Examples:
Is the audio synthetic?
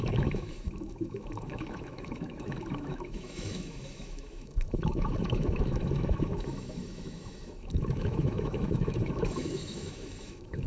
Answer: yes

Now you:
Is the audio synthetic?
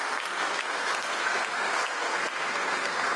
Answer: yes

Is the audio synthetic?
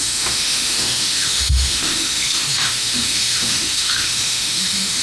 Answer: yes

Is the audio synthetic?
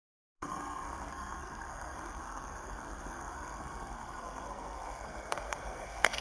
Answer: yes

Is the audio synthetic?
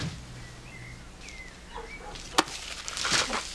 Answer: no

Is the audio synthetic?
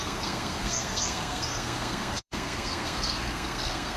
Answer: yes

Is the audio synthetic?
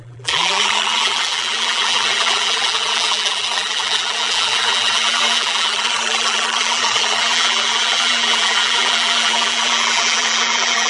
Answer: yes